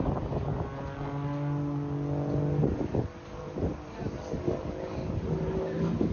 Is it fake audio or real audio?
real